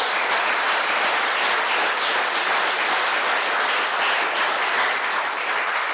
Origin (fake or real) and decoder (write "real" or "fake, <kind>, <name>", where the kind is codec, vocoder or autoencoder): real